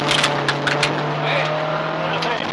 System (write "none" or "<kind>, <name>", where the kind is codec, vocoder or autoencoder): none